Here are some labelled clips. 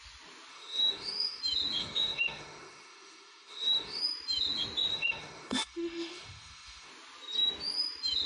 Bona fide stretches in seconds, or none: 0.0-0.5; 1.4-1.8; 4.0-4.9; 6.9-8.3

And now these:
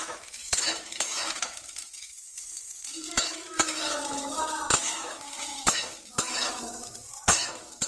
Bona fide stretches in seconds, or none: none

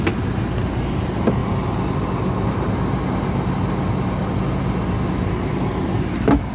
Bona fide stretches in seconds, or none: 0.0-6.5

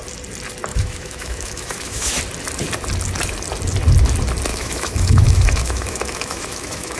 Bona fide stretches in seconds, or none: 0.0-0.7; 2.2-4.5

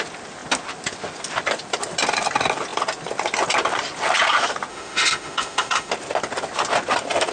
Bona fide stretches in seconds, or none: 0.0-4.7; 5.9-7.3

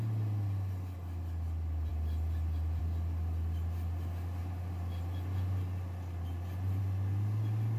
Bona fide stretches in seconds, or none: 0.0-7.8